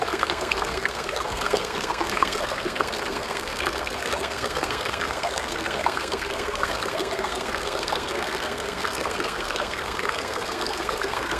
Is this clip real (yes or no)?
no